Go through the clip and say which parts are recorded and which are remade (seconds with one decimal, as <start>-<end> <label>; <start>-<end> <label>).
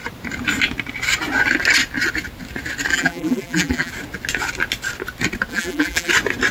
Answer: 0.0-2.9 recorded; 2.9-3.9 remade; 3.9-5.5 recorded; 5.5-6.1 remade; 6.1-6.5 recorded